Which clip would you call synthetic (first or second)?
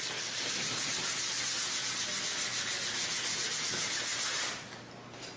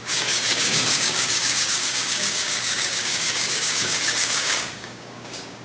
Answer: second